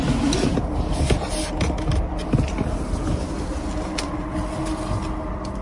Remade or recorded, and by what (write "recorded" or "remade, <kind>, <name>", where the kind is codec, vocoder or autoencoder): recorded